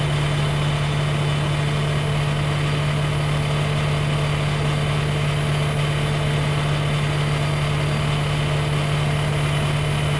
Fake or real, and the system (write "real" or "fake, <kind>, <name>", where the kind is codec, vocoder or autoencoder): real